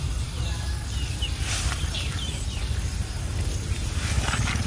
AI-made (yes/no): no